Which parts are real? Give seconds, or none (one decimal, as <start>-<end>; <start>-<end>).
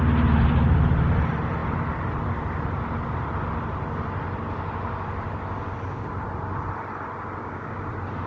0.0-7.4; 7.9-8.3